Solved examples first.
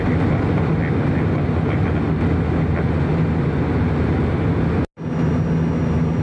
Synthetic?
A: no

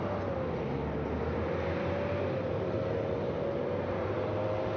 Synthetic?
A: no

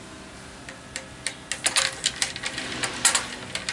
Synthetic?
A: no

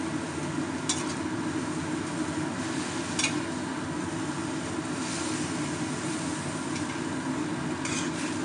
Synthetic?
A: no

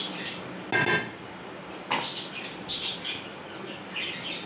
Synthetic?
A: no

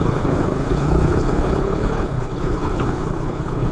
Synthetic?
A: yes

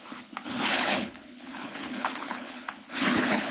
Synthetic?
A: yes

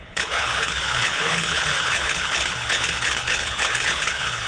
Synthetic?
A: yes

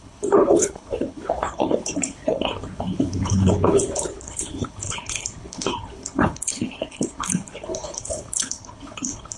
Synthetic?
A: yes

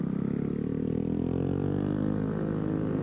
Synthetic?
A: no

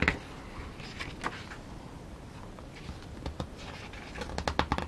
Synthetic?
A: no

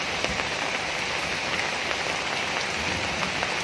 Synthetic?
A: no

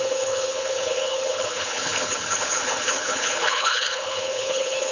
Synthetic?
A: yes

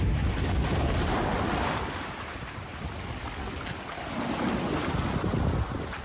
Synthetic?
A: no